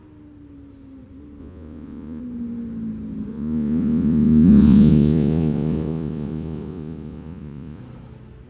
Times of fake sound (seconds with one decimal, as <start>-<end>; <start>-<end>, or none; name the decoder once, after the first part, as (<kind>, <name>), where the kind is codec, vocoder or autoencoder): 1.4-2.2 (vocoder, Vocos); 3.3-7.8